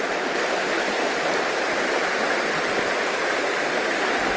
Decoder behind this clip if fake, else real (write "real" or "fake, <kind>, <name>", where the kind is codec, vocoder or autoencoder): real